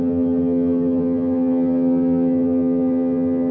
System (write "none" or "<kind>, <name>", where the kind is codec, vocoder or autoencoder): vocoder, HiFi-GAN